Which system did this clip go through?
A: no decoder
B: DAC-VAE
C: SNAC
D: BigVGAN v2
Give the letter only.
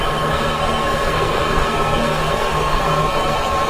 C